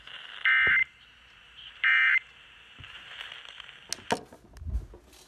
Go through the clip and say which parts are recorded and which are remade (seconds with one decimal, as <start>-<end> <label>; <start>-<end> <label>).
0.0-0.8 recorded; 0.8-3.3 remade; 3.3-5.3 recorded